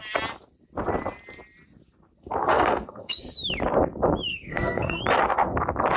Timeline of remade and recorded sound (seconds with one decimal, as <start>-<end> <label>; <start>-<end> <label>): 0.0-2.5 recorded; 2.5-3.2 remade; 3.2-4.3 recorded; 4.3-5.0 remade; 5.0-6.0 recorded